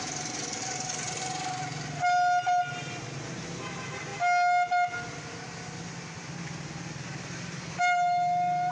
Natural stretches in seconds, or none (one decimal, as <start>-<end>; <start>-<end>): 0.0-8.7

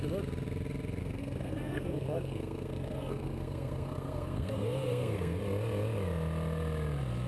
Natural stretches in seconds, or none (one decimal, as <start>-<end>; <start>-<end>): 0.0-1.0; 5.4-7.3

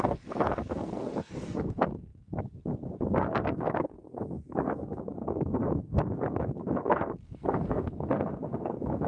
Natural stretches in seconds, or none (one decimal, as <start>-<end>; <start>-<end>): none

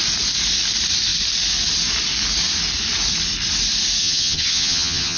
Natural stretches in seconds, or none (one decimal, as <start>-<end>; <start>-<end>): 0.0-4.0

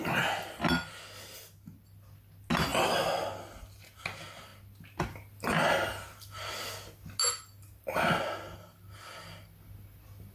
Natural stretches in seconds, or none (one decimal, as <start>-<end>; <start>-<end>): 0.0-10.3

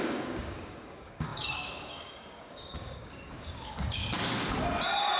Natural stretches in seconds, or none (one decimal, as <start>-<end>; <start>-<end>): 4.0-5.2

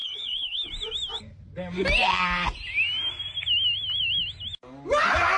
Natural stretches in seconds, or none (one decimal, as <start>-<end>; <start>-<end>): 0.7-5.4